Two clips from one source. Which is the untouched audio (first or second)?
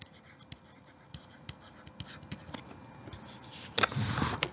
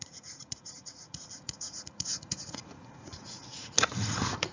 first